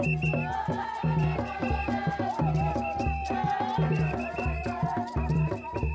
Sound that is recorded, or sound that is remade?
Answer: recorded